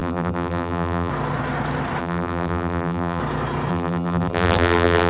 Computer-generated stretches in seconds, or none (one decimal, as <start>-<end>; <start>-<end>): 0.0-1.1; 2.0-3.2; 3.7-5.1